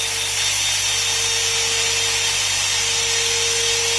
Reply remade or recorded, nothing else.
recorded